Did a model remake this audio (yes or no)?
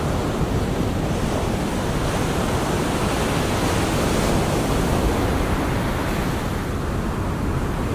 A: no